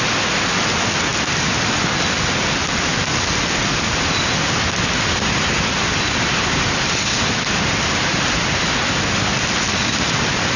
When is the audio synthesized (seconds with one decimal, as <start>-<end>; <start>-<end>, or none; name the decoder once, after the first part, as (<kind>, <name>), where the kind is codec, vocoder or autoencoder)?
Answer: none